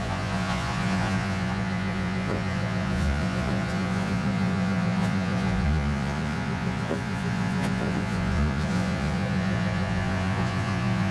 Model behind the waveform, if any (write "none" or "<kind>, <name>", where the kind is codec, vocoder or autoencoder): vocoder, Vocos